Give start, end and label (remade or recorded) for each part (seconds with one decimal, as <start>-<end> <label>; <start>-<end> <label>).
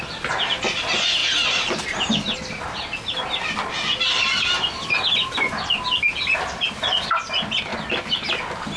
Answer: 0.0-8.8 recorded